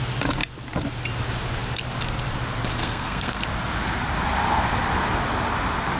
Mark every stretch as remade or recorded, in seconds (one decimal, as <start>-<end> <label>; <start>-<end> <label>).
0.0-2.8 recorded; 2.8-3.4 remade; 3.4-6.0 recorded